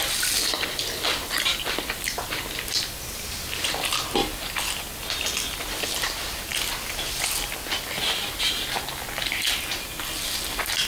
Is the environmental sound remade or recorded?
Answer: recorded